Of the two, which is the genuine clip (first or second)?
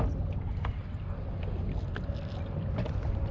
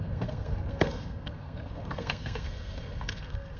first